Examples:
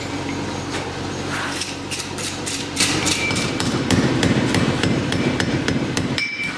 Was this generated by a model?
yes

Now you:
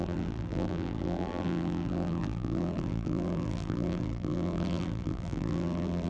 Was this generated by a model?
yes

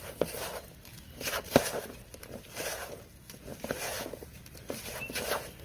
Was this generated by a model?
no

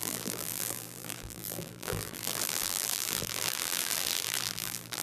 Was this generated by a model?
yes